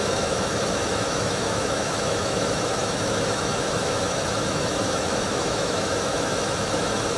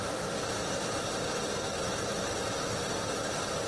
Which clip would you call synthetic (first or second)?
first